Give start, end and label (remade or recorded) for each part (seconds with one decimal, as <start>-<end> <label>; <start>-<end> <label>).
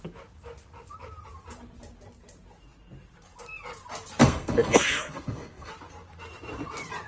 0.0-4.2 recorded; 4.2-5.7 remade; 5.7-7.1 recorded